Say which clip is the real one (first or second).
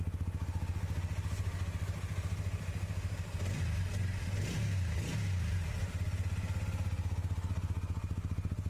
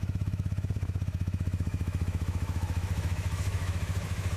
first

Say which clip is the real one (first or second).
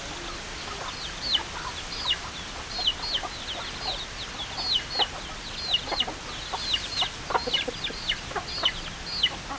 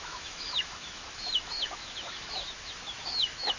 first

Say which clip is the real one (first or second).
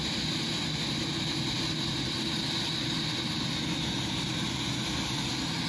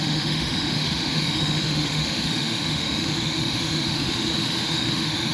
first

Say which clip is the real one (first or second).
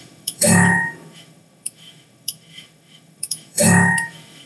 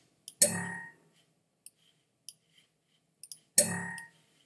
second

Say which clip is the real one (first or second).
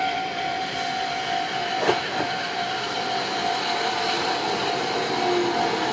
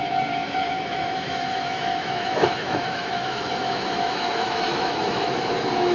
first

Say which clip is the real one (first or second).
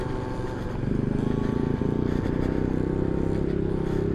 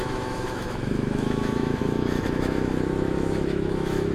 first